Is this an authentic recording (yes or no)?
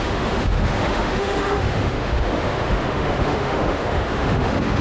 no